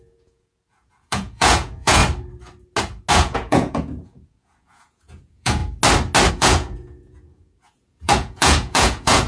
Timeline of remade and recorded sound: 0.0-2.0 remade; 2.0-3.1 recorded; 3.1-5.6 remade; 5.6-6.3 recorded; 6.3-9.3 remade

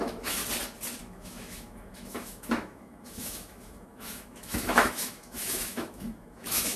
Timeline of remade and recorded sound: 0.0-0.4 remade; 0.4-1.0 recorded; 1.0-6.8 remade

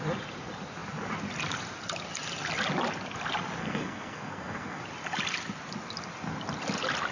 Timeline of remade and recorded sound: 0.0-3.6 recorded; 3.6-4.8 remade; 4.8-7.1 recorded

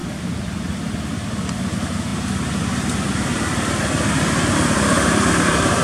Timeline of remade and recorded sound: 0.0-2.1 remade; 2.1-5.3 recorded; 5.3-5.8 remade

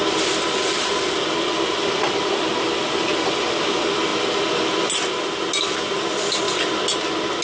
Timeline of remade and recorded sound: 0.0-7.4 recorded